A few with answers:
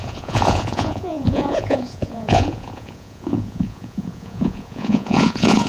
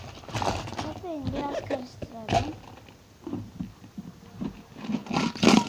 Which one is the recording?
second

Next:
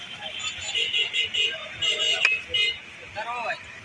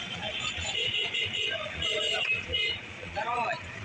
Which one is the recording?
first